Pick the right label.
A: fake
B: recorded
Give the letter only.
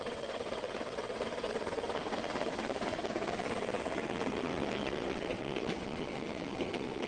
A